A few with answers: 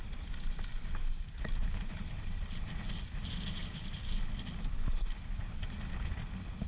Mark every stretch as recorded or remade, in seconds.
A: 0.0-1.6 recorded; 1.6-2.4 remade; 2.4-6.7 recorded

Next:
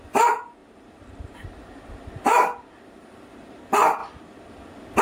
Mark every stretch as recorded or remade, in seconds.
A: 0.0-0.6 recorded; 0.6-3.6 remade; 3.6-5.0 recorded

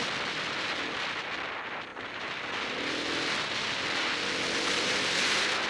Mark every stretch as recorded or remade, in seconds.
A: 0.0-5.7 recorded

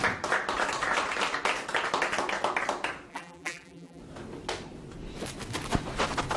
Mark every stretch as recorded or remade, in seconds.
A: 0.0-3.1 recorded; 3.1-4.0 remade; 4.0-6.4 recorded

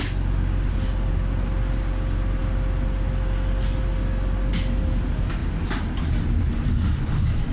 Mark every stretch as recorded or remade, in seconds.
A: 0.0-7.5 recorded

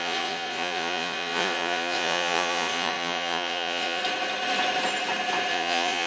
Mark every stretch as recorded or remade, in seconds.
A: 0.0-4.0 remade; 4.0-5.5 recorded; 5.5-6.1 remade

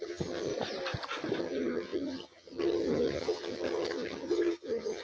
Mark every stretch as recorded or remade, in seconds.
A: 0.0-0.5 remade; 0.5-1.4 recorded; 1.4-5.0 remade